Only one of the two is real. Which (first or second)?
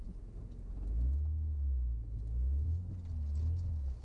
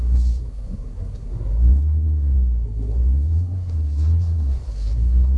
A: first